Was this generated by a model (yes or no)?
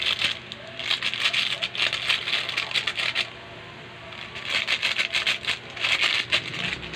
no